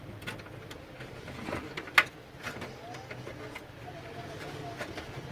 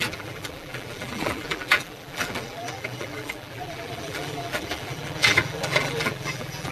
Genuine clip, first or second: first